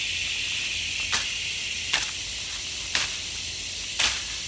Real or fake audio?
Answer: real